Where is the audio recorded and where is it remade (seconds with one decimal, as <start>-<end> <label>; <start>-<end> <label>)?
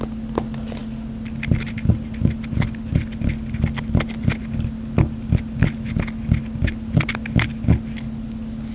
0.0-8.7 recorded